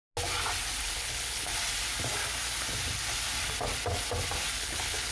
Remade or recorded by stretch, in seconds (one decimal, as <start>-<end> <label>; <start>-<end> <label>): 0.0-0.8 recorded; 0.8-1.5 remade; 1.5-4.6 recorded; 4.6-5.1 remade